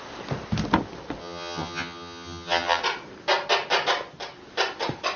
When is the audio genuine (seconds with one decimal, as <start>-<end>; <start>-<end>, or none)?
0.0-1.2; 2.8-5.2

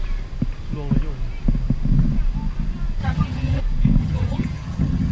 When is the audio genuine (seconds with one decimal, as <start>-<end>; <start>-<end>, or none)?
0.0-3.0; 3.6-4.0

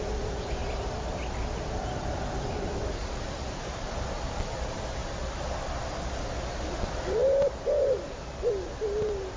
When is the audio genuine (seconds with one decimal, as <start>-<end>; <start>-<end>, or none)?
0.0-9.4

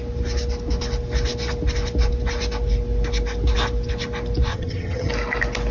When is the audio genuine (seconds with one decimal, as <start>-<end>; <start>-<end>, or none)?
0.0-4.5; 5.1-5.7

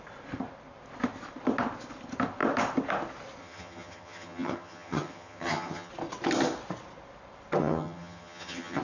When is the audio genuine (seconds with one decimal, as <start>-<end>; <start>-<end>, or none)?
0.0-3.4; 5.9-7.6

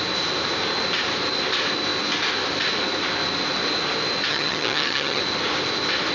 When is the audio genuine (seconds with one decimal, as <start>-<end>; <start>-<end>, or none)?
0.0-4.3; 5.2-6.1

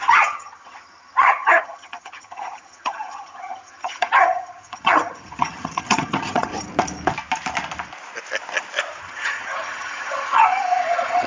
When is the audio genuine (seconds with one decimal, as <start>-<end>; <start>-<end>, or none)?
6.5-9.0